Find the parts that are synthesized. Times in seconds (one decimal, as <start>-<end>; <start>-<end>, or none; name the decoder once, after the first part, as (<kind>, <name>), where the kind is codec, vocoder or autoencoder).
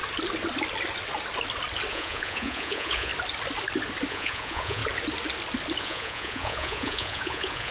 1.9-3.1 (vocoder, Vocos); 4.1-4.8; 5.8-7.7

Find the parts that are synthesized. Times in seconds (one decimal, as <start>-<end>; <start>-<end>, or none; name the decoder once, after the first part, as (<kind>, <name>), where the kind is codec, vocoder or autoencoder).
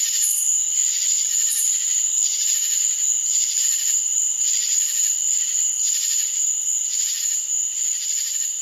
none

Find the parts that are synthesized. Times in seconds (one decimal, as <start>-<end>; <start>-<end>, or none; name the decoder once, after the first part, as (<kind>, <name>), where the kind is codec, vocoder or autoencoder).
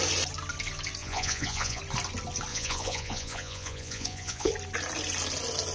1.0-1.8 (vocoder, Vocos); 2.5-4.5